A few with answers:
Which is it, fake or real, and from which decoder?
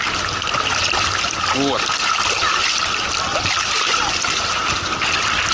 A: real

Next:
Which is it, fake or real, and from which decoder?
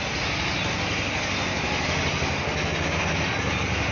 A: real